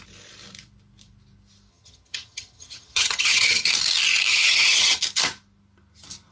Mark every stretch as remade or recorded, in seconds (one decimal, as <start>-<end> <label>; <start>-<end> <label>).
0.0-1.7 recorded; 1.7-3.7 remade; 3.7-4.3 recorded; 4.3-5.0 remade; 5.0-6.3 recorded